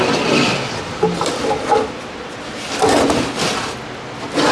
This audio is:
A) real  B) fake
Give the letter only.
A